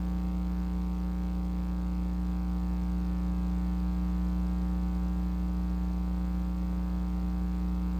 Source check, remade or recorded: recorded